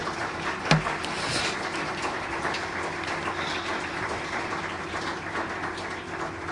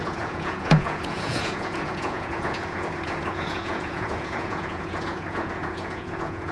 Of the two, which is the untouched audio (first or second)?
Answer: first